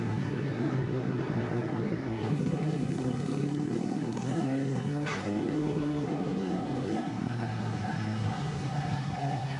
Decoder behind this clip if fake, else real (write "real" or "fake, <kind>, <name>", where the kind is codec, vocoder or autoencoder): fake, codec, SNAC